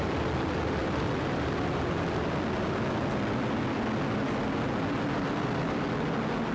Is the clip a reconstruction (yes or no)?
no